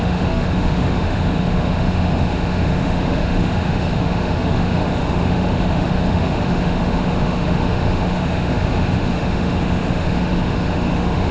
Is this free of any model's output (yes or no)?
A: no